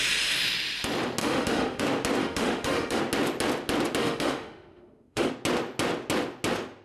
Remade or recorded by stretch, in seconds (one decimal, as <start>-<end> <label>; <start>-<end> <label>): 0.0-1.2 recorded; 1.2-1.8 remade; 1.8-2.2 recorded; 2.2-3.0 remade; 3.0-4.0 recorded; 4.0-5.3 remade; 5.3-6.8 recorded